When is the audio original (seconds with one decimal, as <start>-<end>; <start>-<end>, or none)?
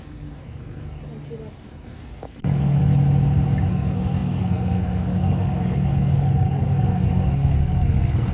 1.0-1.5; 2.8-3.7